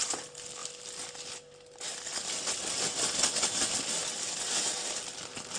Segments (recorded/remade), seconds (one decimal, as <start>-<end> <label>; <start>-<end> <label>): 0.0-5.6 recorded